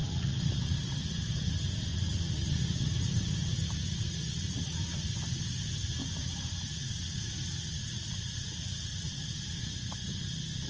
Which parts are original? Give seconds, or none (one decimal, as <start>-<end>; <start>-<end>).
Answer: 1.4-1.9; 5.1-6.0; 9.4-10.7